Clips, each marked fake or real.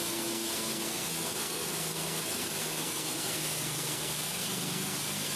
fake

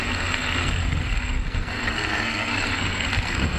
fake